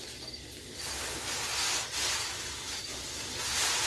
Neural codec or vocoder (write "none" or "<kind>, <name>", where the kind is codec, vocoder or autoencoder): none